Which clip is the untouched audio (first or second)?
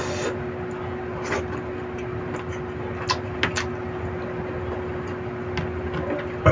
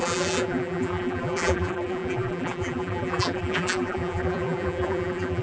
first